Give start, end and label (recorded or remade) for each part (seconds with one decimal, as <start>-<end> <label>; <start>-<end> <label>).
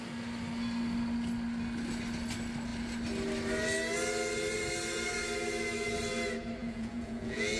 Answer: 0.0-6.6 recorded; 6.6-7.6 remade